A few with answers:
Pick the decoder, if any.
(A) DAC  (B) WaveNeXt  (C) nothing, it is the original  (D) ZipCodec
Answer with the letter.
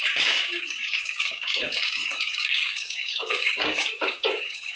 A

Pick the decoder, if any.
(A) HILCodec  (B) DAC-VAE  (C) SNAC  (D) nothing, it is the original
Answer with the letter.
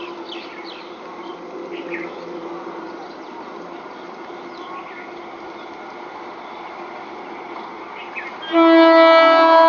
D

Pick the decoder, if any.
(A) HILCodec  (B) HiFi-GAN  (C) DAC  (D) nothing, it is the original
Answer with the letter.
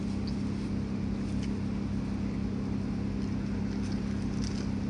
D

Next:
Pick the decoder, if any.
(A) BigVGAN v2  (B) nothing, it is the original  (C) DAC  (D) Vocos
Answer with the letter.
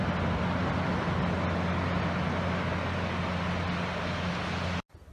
B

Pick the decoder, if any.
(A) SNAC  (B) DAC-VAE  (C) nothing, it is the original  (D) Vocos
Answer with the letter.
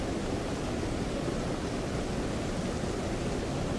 C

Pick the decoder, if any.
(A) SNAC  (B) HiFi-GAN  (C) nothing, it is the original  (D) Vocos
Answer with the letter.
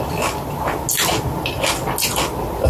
C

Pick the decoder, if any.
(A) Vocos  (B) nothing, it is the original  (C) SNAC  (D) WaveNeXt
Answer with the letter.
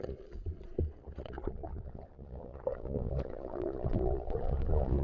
A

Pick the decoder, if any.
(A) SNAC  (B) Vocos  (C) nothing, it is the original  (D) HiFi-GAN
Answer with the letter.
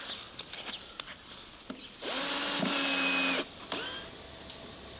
C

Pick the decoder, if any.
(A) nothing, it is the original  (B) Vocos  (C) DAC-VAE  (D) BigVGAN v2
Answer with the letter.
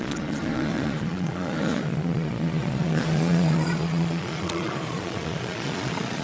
B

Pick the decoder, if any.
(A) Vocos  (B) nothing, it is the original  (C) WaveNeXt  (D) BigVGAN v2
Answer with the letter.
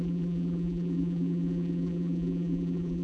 D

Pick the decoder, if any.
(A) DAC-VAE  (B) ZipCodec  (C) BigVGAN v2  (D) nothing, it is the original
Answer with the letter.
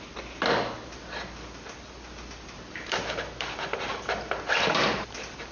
C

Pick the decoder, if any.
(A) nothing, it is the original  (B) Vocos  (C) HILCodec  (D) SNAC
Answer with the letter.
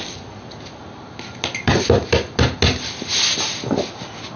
A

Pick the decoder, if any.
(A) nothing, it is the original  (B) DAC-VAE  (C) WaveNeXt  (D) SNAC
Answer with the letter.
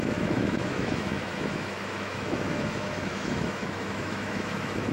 B